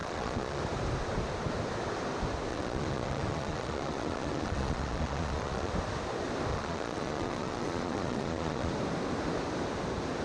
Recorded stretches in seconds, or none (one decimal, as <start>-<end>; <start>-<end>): 0.6-2.5; 5.7-6.5; 8.7-10.2